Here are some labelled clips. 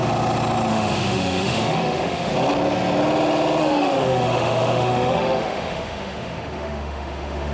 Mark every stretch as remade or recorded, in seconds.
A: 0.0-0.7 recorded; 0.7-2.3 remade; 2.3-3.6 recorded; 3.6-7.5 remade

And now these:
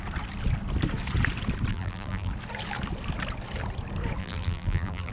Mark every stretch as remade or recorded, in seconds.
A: 0.0-1.7 recorded; 1.7-2.3 remade; 2.3-4.2 recorded; 4.2-5.1 remade

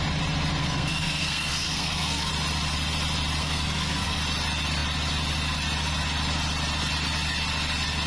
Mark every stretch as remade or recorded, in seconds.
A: 0.0-0.6 recorded; 0.6-2.3 remade; 2.3-3.4 recorded; 3.4-4.2 remade; 4.2-8.1 recorded

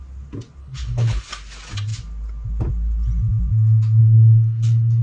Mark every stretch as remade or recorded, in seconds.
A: 0.0-0.6 recorded; 0.6-1.3 remade; 1.3-4.0 recorded; 4.0-5.0 remade

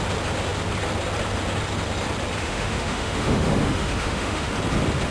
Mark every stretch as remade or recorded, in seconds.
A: 0.0-2.4 recorded; 2.4-4.5 remade; 4.5-5.1 recorded

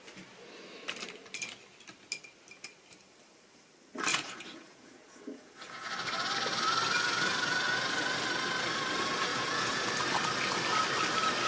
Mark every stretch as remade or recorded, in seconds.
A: 0.0-4.1 recorded; 4.1-5.9 remade; 5.9-9.3 recorded; 9.3-9.9 remade; 9.9-11.5 recorded

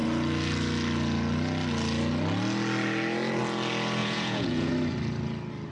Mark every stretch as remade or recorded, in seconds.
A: 0.0-4.0 recorded; 4.0-4.7 remade; 4.7-5.7 recorded

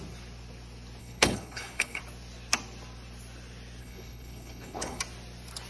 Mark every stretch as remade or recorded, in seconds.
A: 0.0-1.0 recorded; 1.0-2.0 remade; 2.0-3.8 recorded; 3.8-5.0 remade; 5.0-5.7 recorded